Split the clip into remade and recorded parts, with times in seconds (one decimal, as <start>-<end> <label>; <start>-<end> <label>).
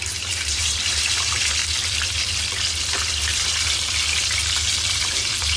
0.0-1.6 remade; 1.6-5.0 recorded; 5.0-5.6 remade